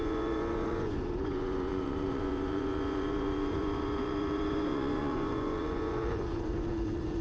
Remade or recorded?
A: remade